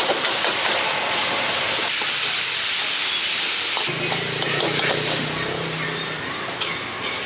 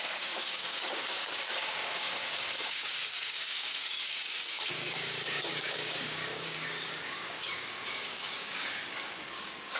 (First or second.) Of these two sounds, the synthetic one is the second